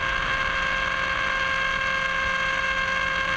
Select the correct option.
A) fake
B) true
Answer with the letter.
B